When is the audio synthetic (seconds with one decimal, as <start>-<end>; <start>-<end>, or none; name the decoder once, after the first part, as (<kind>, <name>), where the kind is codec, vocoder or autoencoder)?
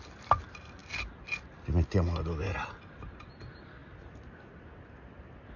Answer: none